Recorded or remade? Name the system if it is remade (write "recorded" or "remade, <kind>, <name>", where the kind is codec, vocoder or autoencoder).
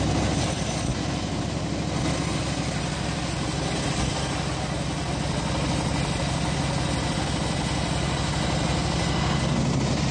recorded